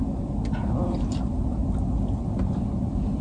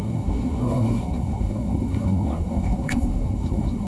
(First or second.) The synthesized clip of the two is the second